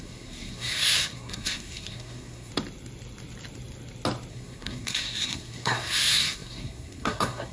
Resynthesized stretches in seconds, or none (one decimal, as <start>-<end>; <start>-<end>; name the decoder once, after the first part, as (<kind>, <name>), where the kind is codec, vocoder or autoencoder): 0.0-2.5 (codec, SNAC); 4.3-7.5